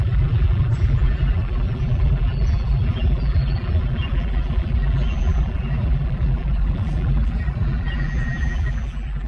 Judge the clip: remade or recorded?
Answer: remade